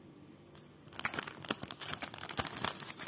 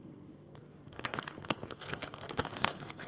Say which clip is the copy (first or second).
second